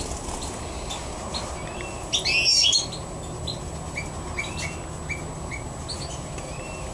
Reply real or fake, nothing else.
real